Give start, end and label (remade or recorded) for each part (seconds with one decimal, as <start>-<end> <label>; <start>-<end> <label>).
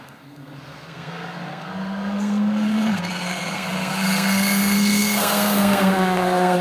0.0-6.6 remade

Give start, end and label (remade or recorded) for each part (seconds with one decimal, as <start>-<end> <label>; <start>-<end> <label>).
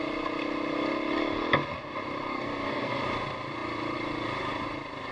0.0-2.3 recorded; 2.3-3.0 remade; 3.0-5.1 recorded